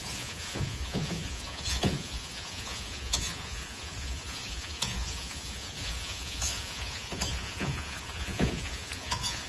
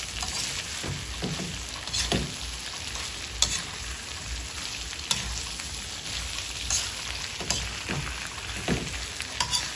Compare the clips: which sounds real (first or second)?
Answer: second